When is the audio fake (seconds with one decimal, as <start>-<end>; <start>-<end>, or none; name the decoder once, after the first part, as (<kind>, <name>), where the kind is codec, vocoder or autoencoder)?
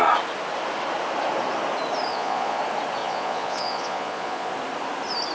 2.1-2.6 (vocoder, Vocos); 3.0-4.5